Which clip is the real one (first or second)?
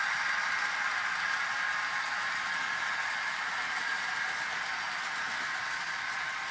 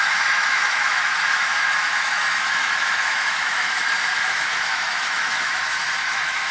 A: first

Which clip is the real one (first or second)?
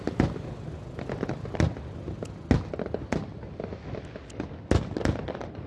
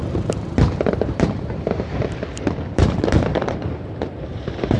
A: first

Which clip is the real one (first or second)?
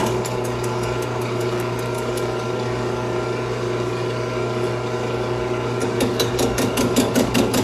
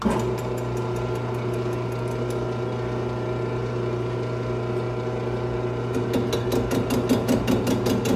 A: second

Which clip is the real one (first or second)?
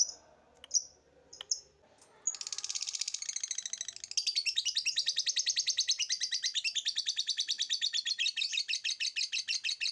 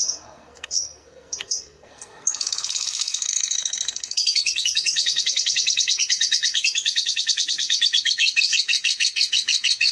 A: first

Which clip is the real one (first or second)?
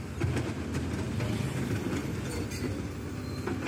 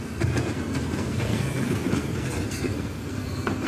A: first